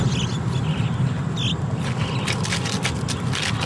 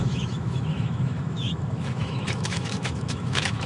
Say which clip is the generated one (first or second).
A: second